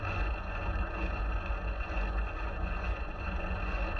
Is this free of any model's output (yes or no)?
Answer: no